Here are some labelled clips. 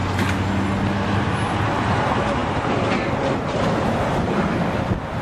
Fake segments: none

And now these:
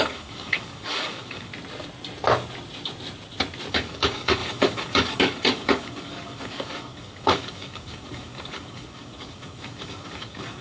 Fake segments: 0.0-1.5 (codec, DAC); 3.7-10.6

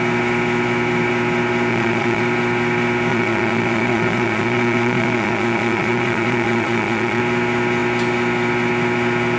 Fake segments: 1.7-2.2 (vocoder, Vocos); 3.1-7.2

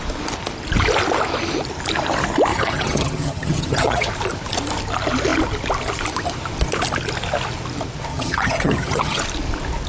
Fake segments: 2.5-4.1 (vocoder, HiFi-GAN); 8.1-9.2

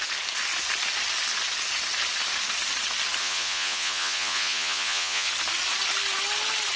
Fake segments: 3.2-5.3 (vocoder, Vocos)

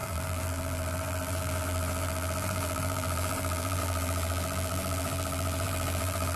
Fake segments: 0.0-6.4 (vocoder, BigVGAN v2)